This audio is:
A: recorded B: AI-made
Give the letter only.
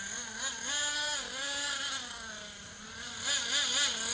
A